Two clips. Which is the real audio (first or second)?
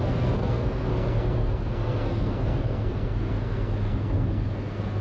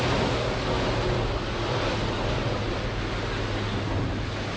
second